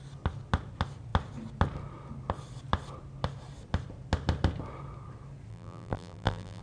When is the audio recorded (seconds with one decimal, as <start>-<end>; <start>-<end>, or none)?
0.0-5.5

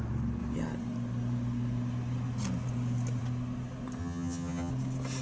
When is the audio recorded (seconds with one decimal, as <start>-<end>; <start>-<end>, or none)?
0.0-4.0; 4.7-5.2

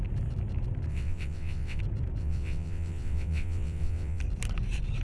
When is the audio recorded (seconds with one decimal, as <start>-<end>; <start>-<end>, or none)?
0.0-0.9; 1.8-2.2; 4.2-5.0

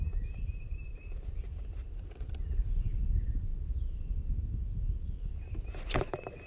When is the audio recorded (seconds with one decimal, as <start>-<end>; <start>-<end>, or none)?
1.5-2.8; 3.5-6.5

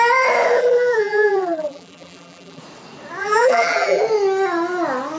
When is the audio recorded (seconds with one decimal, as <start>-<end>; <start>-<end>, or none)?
0.0-0.6; 2.6-3.2; 4.0-5.2

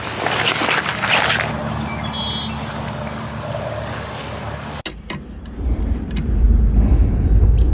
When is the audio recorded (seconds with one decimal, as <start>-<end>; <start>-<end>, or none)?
0.0-7.7

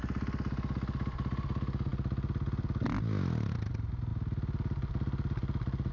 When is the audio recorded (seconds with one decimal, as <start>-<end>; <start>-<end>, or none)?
0.0-5.9

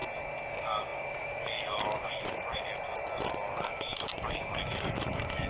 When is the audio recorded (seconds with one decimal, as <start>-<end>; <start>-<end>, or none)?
0.0-0.5; 2.7-3.5